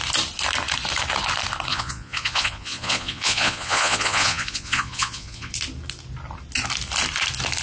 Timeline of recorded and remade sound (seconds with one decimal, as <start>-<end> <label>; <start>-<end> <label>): 0.0-1.7 recorded; 1.7-5.5 remade; 5.5-7.6 recorded